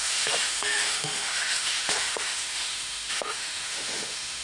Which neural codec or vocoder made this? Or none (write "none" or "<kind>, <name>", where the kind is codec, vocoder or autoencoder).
autoencoder, DAC-VAE